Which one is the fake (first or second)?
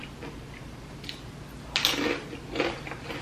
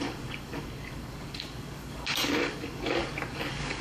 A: second